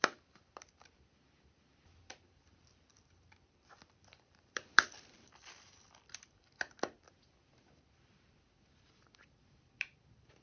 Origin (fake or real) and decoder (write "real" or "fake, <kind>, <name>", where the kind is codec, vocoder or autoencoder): fake, vocoder, BigVGAN v2